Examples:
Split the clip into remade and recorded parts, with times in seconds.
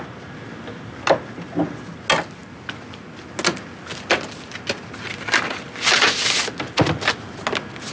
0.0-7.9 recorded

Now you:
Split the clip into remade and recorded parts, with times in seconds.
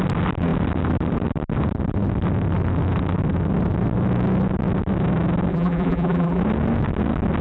0.0-5.5 recorded; 5.5-6.4 remade; 6.4-7.4 recorded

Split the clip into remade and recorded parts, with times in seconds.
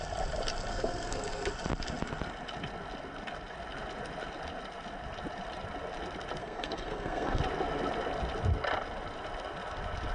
0.0-0.7 recorded; 0.7-1.5 remade; 1.5-6.4 recorded; 6.4-7.4 remade; 7.4-10.1 recorded